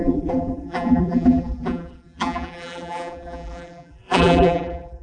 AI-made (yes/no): yes